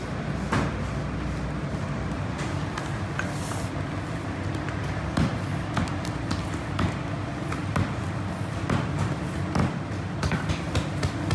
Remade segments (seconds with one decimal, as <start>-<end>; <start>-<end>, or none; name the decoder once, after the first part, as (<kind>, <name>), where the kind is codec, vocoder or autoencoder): none